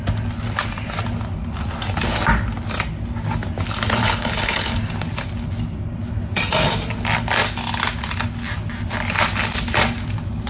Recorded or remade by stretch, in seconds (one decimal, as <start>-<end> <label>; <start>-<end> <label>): 0.0-4.0 recorded; 4.0-4.8 remade; 4.8-10.5 recorded